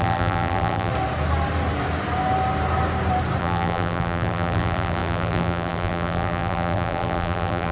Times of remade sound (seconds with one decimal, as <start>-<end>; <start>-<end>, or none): 0.0-0.9; 3.4-7.7